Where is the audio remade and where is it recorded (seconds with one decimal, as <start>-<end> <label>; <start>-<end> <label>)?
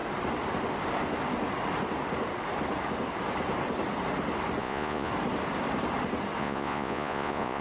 0.0-4.6 recorded; 4.6-5.1 remade; 5.1-6.4 recorded; 6.4-7.6 remade